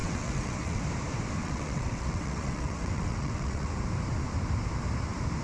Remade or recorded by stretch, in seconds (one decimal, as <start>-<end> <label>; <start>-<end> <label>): 0.0-0.8 remade; 0.8-1.4 recorded; 1.4-3.7 remade; 3.7-5.4 recorded